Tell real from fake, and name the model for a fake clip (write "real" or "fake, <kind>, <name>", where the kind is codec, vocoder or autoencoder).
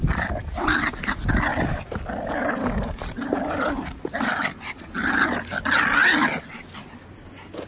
real